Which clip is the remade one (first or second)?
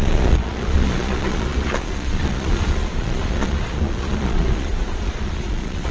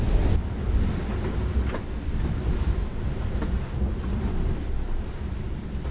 first